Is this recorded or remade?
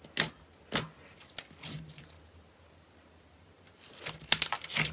recorded